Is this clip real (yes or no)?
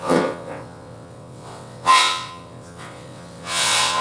no